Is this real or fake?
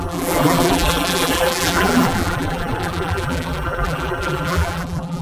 fake